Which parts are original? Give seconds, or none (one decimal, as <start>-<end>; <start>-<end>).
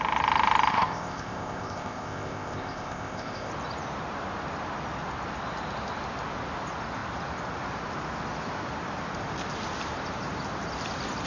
0.0-0.7; 3.5-11.3